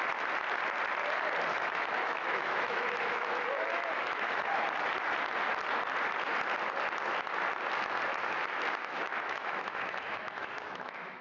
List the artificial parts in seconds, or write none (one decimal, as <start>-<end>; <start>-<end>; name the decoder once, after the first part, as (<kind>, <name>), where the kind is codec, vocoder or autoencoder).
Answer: 1.5-4.5 (autoencoder, DAC-VAE); 8.8-11.2